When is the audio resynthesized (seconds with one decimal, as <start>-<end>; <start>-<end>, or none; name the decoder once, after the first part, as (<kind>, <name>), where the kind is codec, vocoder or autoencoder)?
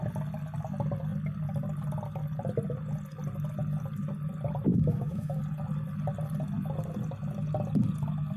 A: 4.7-5.4 (autoencoder, DAC-VAE)